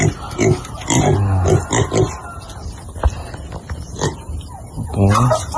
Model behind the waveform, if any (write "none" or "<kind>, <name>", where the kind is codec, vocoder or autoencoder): none